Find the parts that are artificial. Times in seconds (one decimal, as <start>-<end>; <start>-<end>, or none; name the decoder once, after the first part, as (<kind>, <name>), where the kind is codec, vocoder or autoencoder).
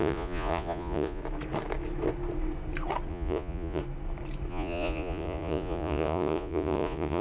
0.0-1.2 (vocoder, Vocos); 3.1-3.8; 4.5-7.2